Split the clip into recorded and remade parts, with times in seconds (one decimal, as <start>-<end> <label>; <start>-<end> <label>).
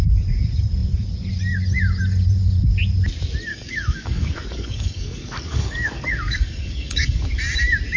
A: 0.0-3.5 recorded; 3.5-7.3 remade; 7.3-8.0 recorded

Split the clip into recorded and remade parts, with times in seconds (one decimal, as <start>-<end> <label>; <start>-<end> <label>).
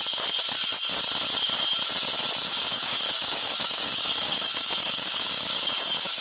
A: 0.0-2.4 recorded; 2.4-6.2 remade